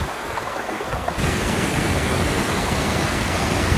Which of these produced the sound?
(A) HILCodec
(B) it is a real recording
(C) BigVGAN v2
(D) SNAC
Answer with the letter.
D